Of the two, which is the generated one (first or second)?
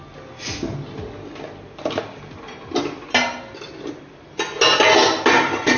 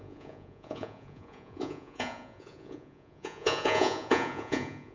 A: second